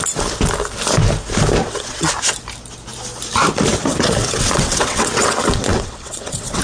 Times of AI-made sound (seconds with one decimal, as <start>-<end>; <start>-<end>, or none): 1.6-2.1; 3.9-6.6